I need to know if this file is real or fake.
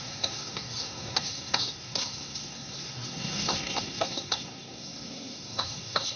fake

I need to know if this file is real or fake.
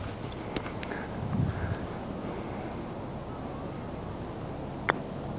real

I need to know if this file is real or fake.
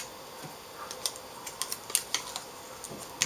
real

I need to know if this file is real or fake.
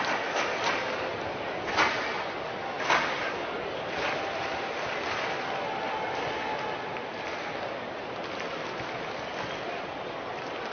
real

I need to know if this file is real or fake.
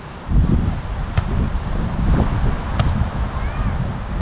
real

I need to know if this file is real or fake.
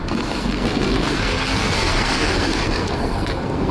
fake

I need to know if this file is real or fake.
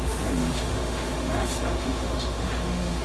fake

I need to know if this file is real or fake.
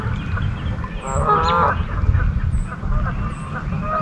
real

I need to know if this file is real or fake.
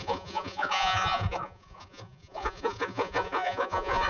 fake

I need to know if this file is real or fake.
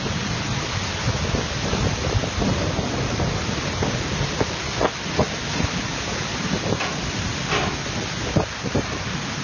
real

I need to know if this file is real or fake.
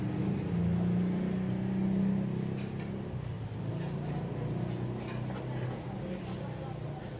real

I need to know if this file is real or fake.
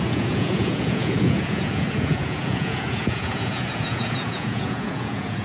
fake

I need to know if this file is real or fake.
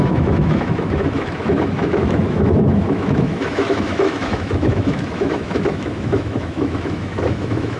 fake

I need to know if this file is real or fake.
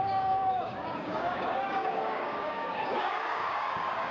fake